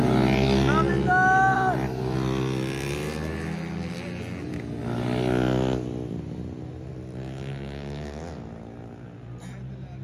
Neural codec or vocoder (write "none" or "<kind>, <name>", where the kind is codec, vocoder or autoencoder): none